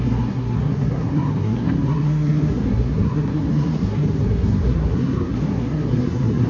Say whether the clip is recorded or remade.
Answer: remade